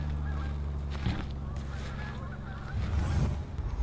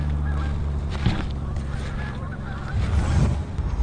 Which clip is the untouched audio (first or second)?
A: first